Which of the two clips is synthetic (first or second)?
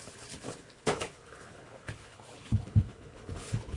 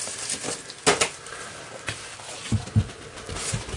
first